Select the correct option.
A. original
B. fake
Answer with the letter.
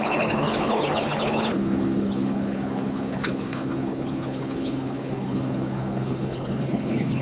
B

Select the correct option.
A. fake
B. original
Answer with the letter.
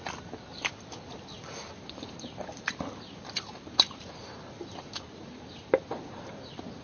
B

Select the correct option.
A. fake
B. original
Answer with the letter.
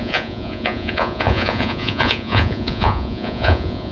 A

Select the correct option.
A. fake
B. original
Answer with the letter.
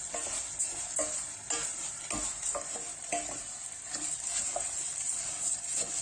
B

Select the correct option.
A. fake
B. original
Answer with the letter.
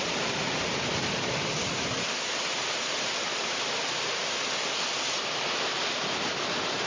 B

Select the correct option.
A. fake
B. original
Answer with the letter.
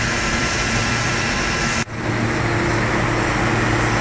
A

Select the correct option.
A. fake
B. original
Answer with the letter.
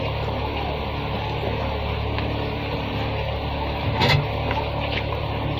B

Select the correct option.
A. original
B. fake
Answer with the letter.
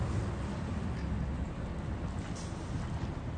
A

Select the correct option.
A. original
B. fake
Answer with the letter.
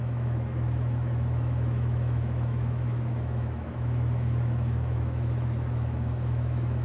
B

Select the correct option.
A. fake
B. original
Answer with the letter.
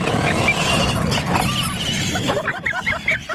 B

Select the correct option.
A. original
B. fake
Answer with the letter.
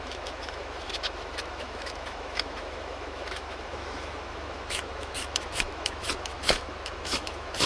B